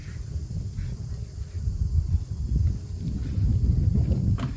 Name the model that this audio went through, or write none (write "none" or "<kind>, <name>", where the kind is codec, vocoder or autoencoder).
none